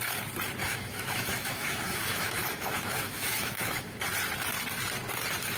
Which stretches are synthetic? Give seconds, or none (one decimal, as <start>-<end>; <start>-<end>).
0.6-4.0